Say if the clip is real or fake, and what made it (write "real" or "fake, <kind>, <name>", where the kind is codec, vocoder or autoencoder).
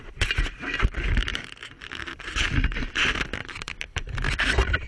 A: real